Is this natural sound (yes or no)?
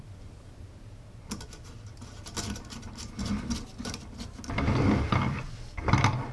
yes